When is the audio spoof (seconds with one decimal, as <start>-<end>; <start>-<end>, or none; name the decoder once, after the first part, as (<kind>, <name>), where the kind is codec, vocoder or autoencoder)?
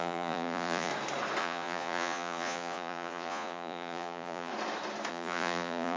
0.0-0.9 (vocoder, Vocos); 1.4-4.5; 5.1-6.0